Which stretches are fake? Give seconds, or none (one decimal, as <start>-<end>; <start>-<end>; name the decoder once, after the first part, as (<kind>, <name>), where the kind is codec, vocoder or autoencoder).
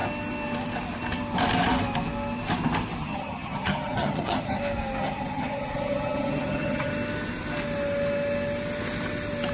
3.0-4.6 (vocoder, HiFi-GAN); 5.0-6.9